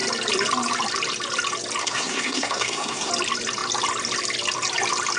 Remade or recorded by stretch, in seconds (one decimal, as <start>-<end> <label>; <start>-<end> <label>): 0.0-1.8 recorded; 1.8-3.1 remade; 3.1-5.2 recorded